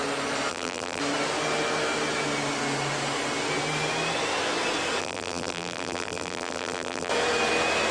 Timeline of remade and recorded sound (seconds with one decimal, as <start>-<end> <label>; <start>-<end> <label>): 0.0-0.5 recorded; 0.5-1.0 remade; 1.0-5.0 recorded; 5.0-7.1 remade; 7.1-7.9 recorded